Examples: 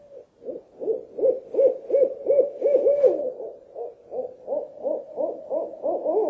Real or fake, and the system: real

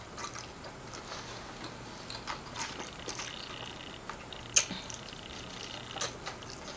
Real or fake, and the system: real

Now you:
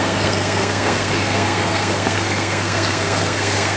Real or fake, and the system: fake, codec, SNAC